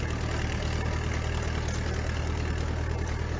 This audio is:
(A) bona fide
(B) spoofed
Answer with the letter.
A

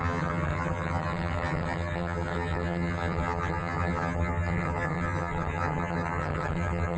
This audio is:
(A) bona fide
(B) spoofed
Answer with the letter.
B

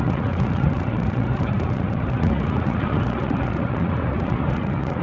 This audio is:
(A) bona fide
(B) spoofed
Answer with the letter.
B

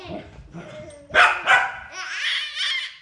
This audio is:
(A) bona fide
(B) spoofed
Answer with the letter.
A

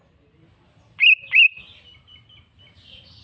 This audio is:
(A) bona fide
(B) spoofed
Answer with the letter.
A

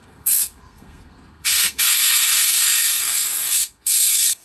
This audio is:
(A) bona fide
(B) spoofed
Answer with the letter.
B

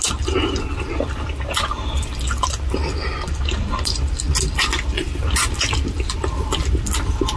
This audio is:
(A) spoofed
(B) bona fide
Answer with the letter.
B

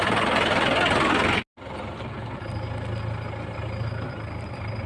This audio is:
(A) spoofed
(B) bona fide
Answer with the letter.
B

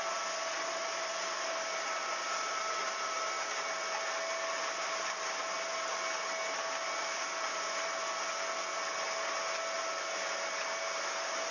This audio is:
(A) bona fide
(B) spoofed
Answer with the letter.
A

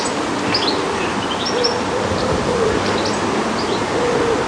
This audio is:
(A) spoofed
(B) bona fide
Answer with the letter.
B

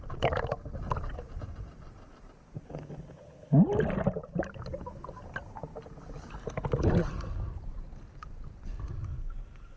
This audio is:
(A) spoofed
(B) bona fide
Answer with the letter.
B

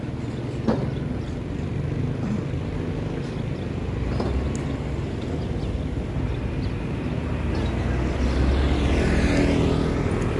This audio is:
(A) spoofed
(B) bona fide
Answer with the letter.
B